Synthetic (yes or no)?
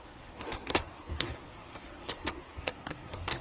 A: yes